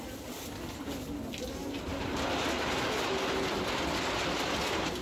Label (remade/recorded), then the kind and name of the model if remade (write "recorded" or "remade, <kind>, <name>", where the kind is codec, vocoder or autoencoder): recorded